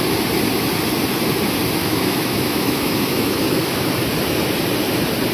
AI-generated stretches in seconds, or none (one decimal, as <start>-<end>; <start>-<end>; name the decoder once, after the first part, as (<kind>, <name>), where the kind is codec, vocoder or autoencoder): 1.8-3.9 (autoencoder, DAC-VAE)